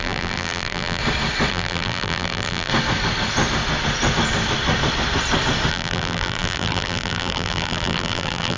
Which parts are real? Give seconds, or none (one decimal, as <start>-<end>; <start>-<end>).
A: 1.0-1.5; 2.7-5.7